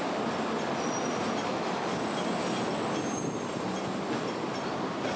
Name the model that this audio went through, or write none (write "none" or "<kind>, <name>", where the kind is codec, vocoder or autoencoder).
none